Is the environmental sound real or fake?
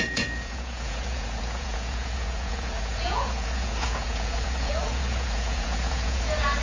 fake